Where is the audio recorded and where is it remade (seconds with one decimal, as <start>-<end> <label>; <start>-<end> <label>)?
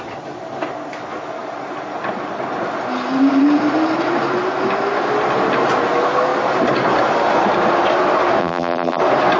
0.0-8.4 recorded; 8.4-9.0 remade; 9.0-9.4 recorded